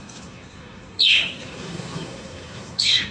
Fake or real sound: fake